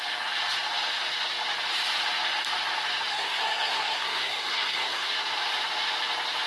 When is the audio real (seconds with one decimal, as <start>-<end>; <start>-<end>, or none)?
0.0-3.1; 5.1-6.5